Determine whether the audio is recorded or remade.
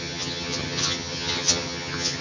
remade